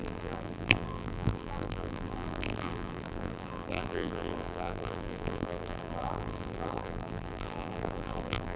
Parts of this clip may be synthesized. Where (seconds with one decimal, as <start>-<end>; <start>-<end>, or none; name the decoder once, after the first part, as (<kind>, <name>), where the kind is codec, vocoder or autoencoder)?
0.0-8.6 (vocoder, BigVGAN v2)